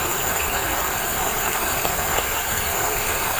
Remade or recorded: remade